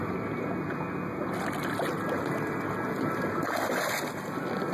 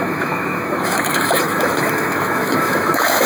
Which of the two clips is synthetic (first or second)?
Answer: second